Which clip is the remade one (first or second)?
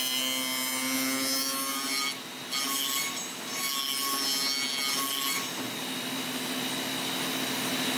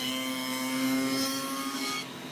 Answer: second